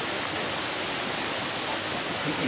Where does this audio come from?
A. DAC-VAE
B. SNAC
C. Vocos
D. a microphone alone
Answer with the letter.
D